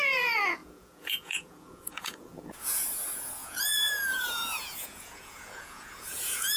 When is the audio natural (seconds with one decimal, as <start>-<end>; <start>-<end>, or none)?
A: none